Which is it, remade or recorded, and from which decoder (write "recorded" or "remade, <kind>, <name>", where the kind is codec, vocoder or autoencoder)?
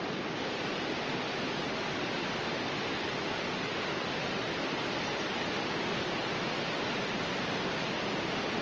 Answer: recorded